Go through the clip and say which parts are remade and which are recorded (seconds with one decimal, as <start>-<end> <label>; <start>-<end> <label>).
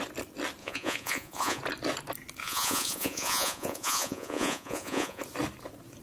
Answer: 0.0-0.6 recorded; 0.6-1.6 remade; 1.6-2.4 recorded; 2.4-5.2 remade; 5.2-6.0 recorded